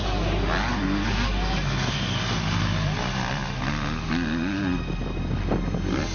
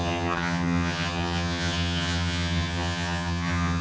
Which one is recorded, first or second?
first